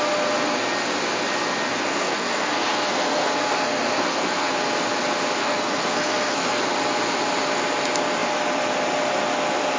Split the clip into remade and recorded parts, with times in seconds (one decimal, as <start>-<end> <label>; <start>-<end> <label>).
0.0-1.7 recorded; 1.7-4.5 remade; 4.5-5.4 recorded; 5.4-6.6 remade; 6.6-9.8 recorded